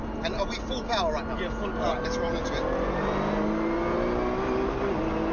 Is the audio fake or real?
real